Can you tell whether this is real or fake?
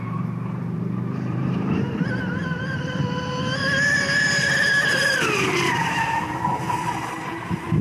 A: fake